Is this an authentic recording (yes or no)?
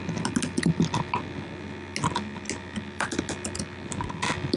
yes